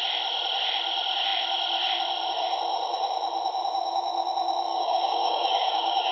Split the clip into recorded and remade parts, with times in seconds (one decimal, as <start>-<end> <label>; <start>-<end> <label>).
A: 0.0-4.7 recorded; 4.7-6.1 remade